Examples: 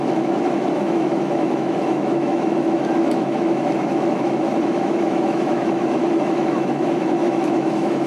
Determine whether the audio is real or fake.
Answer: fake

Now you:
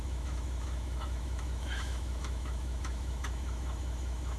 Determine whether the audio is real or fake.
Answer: fake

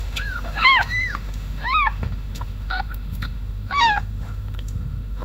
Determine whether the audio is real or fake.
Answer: fake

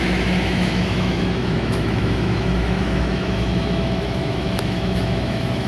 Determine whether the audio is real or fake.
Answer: fake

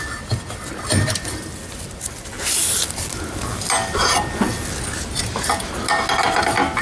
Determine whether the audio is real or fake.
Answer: real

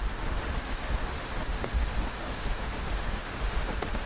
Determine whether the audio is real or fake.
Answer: fake